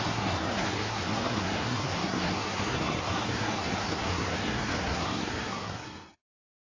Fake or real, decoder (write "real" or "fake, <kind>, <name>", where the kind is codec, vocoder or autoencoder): fake, codec, SNAC